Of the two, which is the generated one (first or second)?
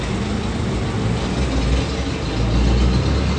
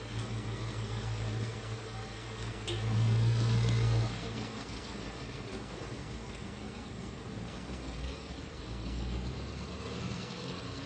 second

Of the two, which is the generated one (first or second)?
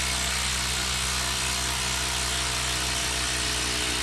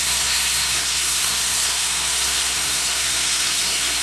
second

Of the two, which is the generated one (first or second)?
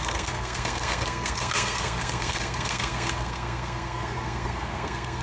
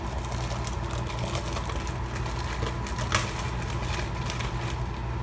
first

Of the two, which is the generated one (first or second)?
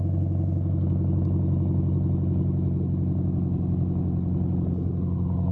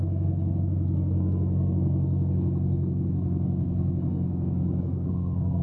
second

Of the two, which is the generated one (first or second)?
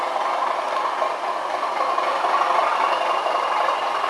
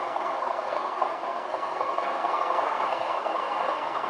second